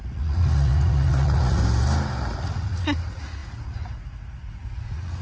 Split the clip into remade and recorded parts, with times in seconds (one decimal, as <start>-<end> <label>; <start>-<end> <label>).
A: 0.0-1.6 remade; 1.6-2.4 recorded; 2.4-5.2 remade